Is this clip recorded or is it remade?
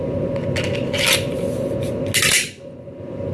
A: recorded